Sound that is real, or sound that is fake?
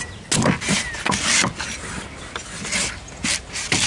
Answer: real